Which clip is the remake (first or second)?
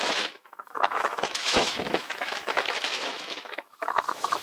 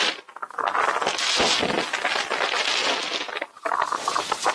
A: first